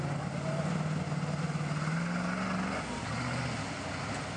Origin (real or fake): real